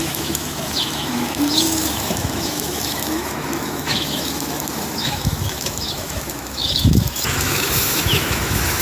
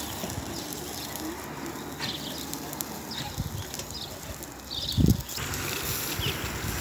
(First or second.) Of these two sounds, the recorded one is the second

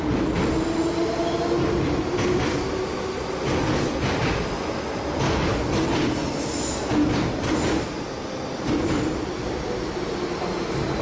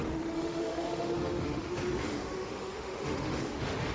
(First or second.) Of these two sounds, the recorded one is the first